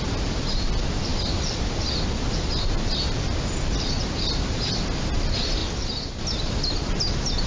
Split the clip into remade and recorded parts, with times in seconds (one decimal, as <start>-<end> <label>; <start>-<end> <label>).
0.0-7.5 recorded